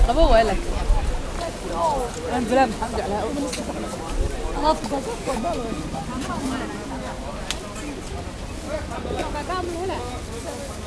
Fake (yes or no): no